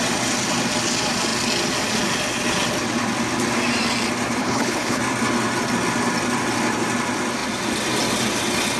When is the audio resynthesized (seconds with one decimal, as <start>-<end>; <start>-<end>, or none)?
4.4-5.0